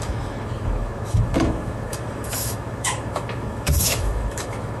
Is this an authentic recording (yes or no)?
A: no